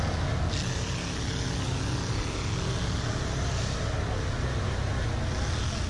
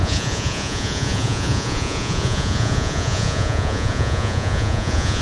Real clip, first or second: first